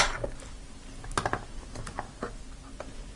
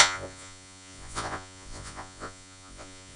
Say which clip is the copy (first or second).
second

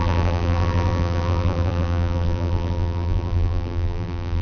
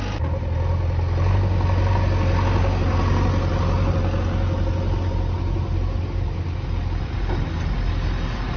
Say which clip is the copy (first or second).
first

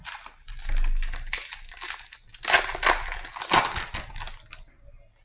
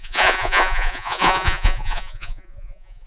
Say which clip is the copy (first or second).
second